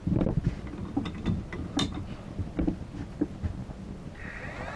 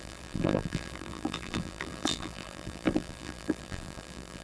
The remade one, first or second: second